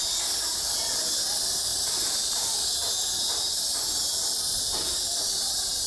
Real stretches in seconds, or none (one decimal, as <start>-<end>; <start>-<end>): 0.0-1.7; 2.7-5.9